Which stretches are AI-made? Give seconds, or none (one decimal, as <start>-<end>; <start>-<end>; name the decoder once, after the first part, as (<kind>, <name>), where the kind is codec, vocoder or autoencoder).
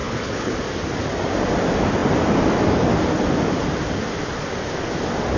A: 0.0-0.5 (codec, HILCodec)